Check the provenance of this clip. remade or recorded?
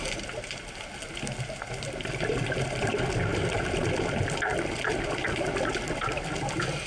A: recorded